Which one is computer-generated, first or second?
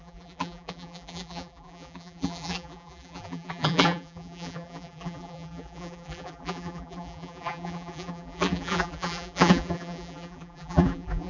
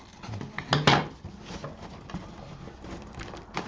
first